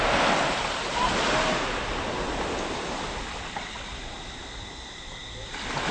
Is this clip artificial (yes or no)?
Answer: no